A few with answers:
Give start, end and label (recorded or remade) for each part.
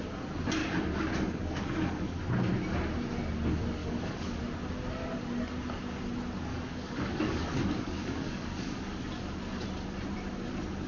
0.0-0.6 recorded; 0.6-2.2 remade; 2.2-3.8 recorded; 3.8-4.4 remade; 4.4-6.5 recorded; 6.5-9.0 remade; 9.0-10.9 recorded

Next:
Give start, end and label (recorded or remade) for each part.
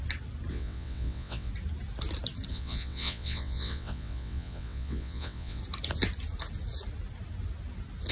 0.0-0.5 recorded; 0.5-1.5 remade; 1.5-2.5 recorded; 2.5-5.6 remade; 5.6-8.1 recorded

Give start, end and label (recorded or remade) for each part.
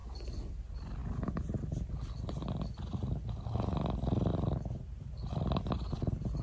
0.0-6.4 recorded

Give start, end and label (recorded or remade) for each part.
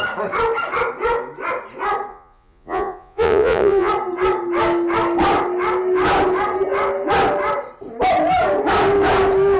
0.0-2.1 recorded; 2.1-3.9 remade; 3.9-9.6 recorded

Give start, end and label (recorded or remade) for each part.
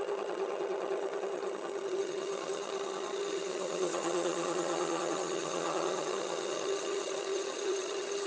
0.0-8.3 remade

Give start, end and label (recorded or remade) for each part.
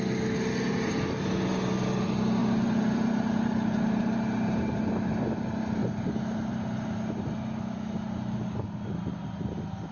0.0-2.4 recorded; 2.4-4.8 remade; 4.8-5.8 recorded; 5.8-6.5 remade; 6.5-9.9 recorded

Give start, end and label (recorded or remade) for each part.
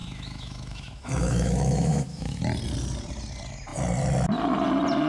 0.0-2.4 remade; 2.4-5.1 recorded